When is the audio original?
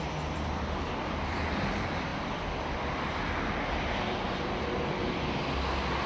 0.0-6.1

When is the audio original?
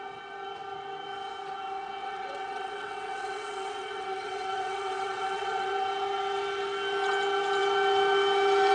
0.0-2.0; 5.7-8.7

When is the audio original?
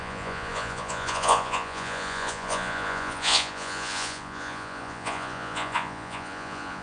none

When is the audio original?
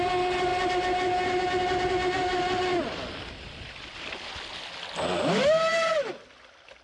0.0-6.8